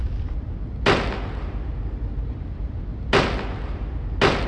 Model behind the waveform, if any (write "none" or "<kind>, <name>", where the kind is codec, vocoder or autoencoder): none